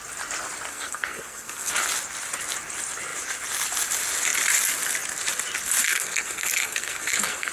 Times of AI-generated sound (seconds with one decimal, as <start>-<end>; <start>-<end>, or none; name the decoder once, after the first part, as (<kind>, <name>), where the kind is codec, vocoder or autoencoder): 0.7-1.7 (codec, SNAC); 5.8-7.5